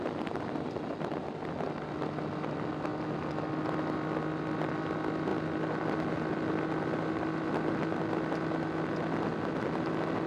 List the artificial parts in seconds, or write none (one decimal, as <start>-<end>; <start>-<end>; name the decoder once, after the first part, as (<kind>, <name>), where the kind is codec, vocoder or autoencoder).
none